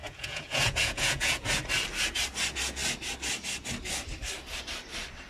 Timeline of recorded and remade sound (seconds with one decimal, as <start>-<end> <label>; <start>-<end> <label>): 0.0-1.5 remade; 1.5-5.3 recorded